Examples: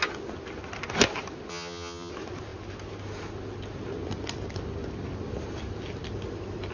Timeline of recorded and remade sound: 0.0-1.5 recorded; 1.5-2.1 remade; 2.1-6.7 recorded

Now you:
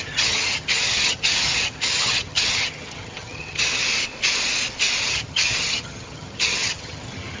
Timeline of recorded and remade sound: 0.0-3.8 remade; 3.8-5.0 recorded; 5.0-7.4 remade

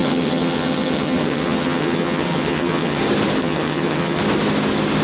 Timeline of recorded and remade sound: 0.0-3.0 remade; 3.0-3.4 recorded; 3.4-4.2 remade; 4.2-5.0 recorded